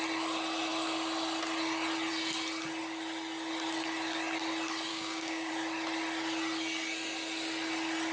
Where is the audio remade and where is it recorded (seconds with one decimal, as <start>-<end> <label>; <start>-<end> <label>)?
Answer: 0.0-4.9 recorded; 4.9-5.5 remade; 5.5-8.1 recorded